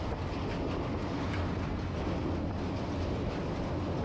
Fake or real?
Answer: real